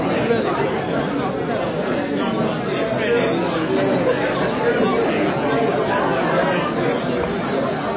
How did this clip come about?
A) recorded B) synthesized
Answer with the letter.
A